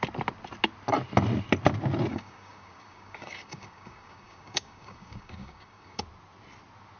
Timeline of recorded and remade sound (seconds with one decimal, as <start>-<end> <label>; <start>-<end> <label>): 0.0-2.1 recorded; 2.1-6.0 remade; 6.0-7.0 recorded